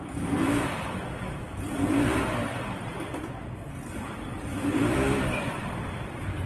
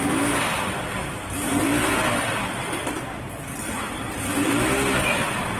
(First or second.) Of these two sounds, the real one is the second